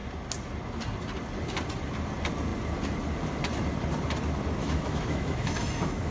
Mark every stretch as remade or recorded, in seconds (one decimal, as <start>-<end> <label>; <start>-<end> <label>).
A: 0.0-4.6 recorded; 4.6-6.1 remade